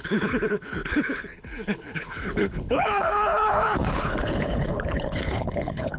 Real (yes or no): no